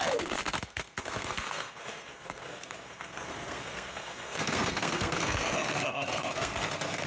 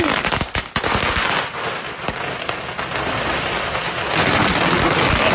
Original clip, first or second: second